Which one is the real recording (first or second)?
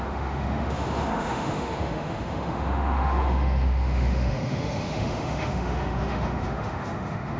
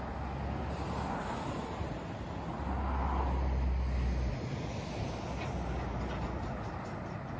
second